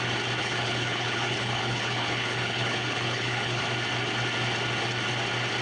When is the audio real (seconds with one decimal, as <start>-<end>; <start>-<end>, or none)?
0.0-0.4; 3.6-5.6

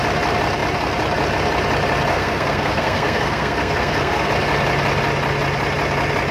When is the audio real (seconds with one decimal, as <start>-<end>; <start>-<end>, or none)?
0.0-2.1; 4.3-6.3

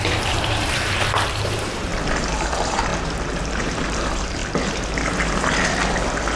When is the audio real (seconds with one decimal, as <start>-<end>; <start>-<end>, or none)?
1.9-2.4; 2.9-3.5; 4.4-6.4

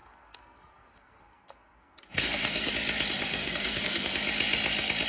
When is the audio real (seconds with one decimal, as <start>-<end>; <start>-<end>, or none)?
2.7-3.3; 4.1-5.1

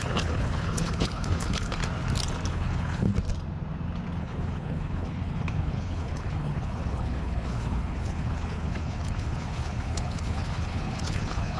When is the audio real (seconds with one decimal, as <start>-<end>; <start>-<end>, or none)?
1.8-2.5; 3.1-4.2

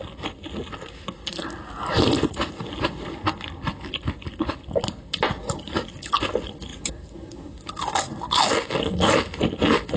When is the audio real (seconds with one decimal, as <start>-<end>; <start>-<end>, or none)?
0.0-5.4; 6.1-6.7; 7.7-10.0

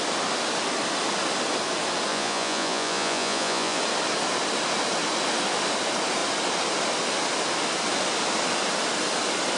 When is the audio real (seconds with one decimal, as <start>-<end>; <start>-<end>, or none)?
0.0-2.1; 3.8-9.6

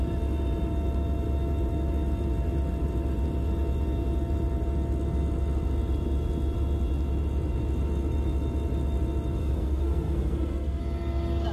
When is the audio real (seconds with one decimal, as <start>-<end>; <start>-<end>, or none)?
0.0-9.4; 10.8-11.5